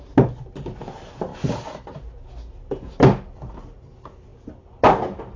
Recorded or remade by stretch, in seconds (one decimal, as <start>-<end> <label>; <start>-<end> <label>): 0.0-5.4 recorded